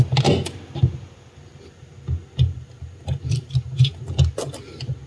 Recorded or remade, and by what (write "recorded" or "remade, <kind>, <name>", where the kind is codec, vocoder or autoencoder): recorded